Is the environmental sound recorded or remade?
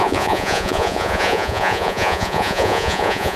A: remade